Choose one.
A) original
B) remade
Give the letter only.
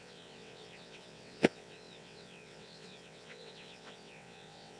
B